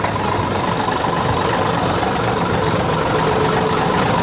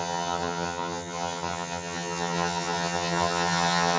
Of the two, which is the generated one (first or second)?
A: second